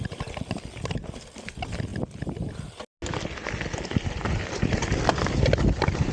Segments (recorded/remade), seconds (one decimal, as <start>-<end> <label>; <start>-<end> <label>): 0.0-6.1 recorded